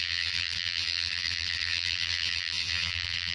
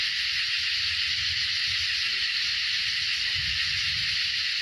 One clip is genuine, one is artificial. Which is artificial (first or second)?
first